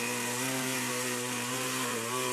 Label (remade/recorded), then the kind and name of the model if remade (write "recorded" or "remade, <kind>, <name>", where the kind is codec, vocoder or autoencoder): remade, vocoder, BigVGAN v2